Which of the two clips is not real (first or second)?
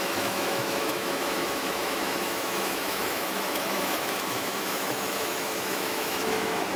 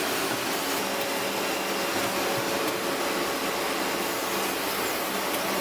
first